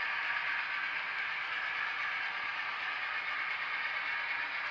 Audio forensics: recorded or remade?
recorded